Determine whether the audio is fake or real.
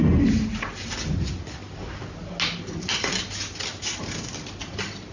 real